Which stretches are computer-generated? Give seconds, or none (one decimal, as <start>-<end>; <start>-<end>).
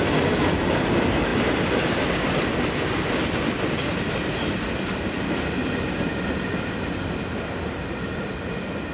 none